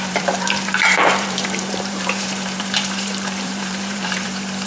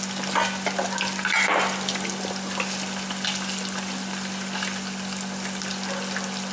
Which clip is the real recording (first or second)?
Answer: second